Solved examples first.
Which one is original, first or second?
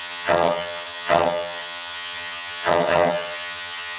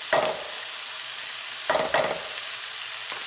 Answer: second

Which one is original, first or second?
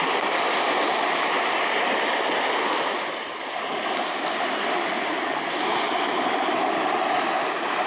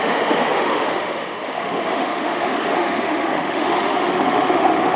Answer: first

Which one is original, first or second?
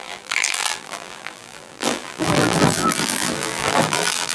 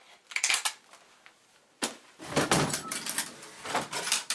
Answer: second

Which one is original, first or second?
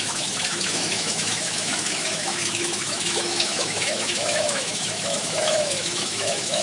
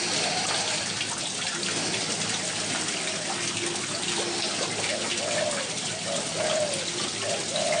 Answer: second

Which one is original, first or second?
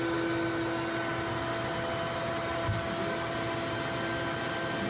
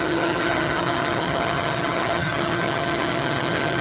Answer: first